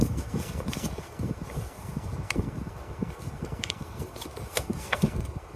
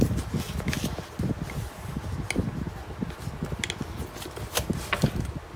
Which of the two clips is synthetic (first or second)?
first